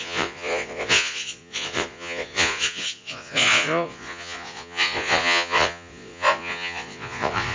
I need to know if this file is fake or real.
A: fake